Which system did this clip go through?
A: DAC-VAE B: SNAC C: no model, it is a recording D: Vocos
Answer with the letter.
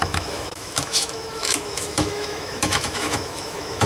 A